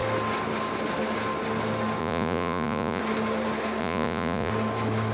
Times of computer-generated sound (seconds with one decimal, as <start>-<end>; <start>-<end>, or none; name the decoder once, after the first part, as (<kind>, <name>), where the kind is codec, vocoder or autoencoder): 2.0-3.0 (vocoder, Vocos); 3.8-4.5